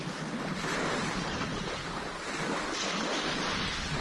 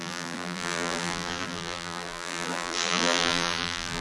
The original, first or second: first